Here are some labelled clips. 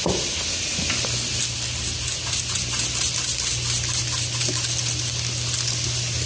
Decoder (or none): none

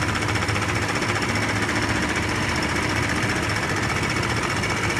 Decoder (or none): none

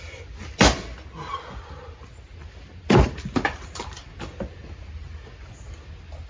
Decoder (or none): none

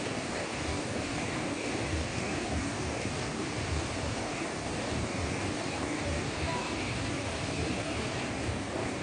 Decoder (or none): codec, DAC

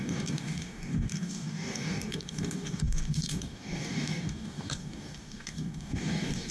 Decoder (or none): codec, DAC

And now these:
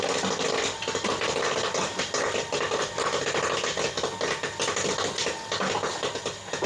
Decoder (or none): none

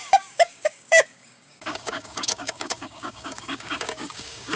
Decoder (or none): codec, DAC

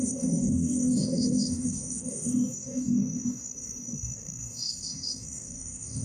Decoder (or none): codec, DAC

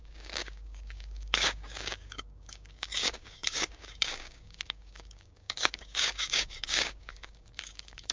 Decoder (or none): codec, DAC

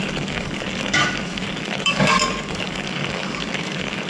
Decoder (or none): codec, DAC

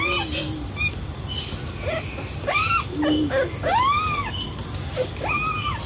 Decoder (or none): none